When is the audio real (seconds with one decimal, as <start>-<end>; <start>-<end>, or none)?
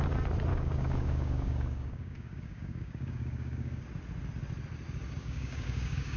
0.0-0.5; 3.8-5.2